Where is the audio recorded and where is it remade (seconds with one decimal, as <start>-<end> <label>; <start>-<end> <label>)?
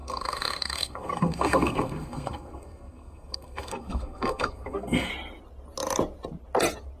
0.0-5.1 remade; 5.1-7.0 recorded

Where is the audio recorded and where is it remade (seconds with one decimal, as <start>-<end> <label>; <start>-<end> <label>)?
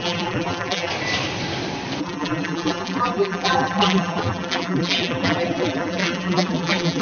0.0-0.9 remade; 0.9-2.0 recorded; 2.0-7.0 remade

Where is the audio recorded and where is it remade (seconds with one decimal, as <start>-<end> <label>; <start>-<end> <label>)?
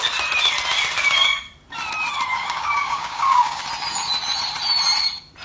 0.0-2.3 recorded; 2.3-3.6 remade; 3.6-5.4 recorded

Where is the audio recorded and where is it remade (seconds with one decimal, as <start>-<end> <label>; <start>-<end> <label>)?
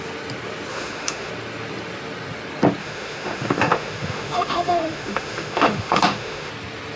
0.0-0.7 recorded; 0.7-1.3 remade; 1.3-2.8 recorded; 2.8-6.5 remade; 6.5-7.0 recorded